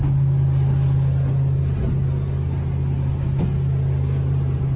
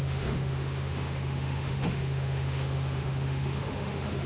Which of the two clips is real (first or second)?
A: first